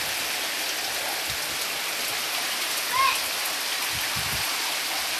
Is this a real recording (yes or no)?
yes